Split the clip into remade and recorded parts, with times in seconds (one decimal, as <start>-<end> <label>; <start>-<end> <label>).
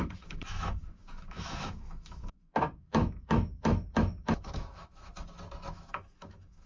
0.0-5.1 remade; 5.1-5.7 recorded; 5.7-6.7 remade